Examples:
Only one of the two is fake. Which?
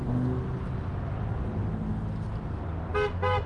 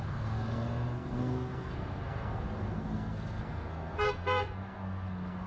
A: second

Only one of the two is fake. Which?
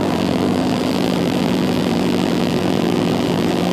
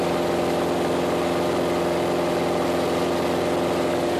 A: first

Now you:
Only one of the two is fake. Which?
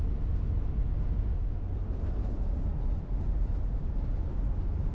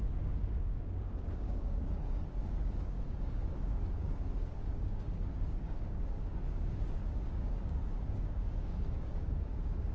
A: second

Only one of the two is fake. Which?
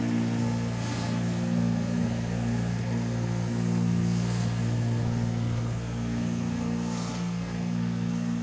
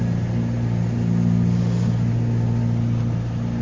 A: first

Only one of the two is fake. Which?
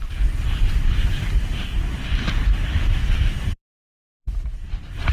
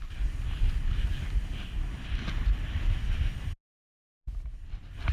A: first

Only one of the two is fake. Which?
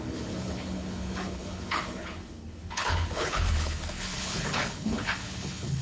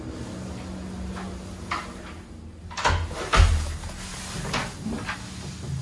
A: first